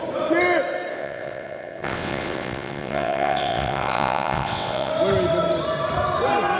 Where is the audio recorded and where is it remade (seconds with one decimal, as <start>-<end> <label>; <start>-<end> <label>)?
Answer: 0.0-0.9 recorded; 0.9-4.9 remade; 4.9-6.6 recorded